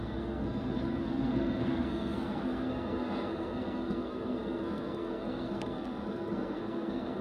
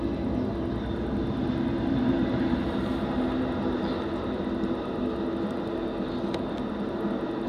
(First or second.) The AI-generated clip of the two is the first